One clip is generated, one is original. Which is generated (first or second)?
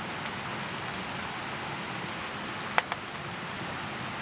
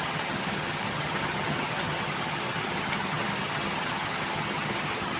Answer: second